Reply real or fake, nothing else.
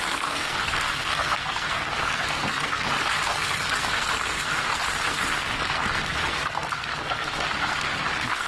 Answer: fake